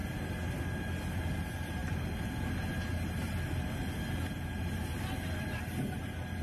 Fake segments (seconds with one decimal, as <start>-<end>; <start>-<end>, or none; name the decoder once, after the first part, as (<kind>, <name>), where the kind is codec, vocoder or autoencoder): none